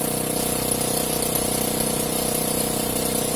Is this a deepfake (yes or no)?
no